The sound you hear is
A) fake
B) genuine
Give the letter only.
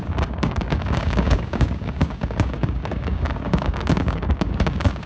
A